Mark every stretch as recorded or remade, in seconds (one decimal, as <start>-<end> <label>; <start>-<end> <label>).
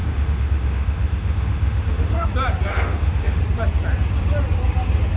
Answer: 0.0-2.3 remade; 2.3-2.7 recorded; 2.7-3.4 remade; 3.4-5.2 recorded